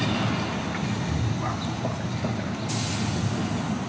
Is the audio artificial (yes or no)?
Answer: no